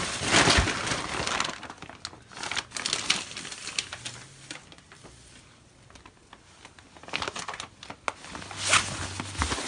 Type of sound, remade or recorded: recorded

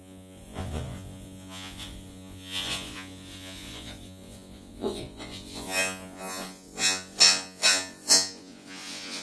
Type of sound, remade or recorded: remade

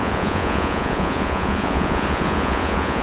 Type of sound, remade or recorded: remade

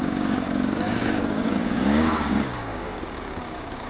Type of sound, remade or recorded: remade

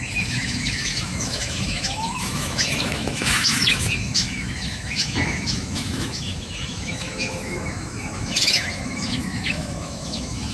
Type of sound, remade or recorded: remade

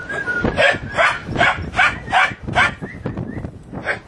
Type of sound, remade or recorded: recorded